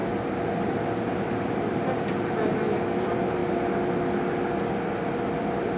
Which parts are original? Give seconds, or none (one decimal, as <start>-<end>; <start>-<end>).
0.0-1.1; 3.4-5.3